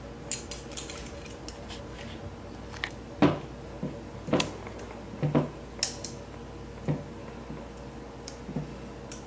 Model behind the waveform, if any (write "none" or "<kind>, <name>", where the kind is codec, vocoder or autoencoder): none